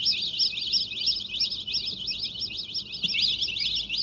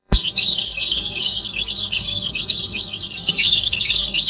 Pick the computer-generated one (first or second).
second